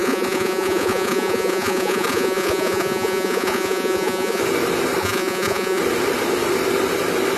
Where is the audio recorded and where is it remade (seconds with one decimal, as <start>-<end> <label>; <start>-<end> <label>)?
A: 0.0-4.4 remade; 4.4-5.0 recorded; 5.0-5.8 remade; 5.8-7.4 recorded